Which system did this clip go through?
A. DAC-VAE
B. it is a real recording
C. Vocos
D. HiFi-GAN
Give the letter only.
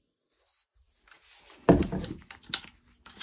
B